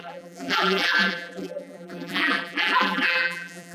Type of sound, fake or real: fake